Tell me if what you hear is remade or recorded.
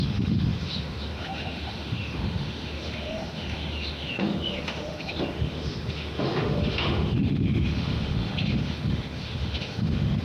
remade